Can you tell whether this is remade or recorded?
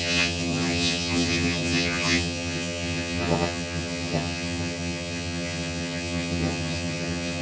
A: remade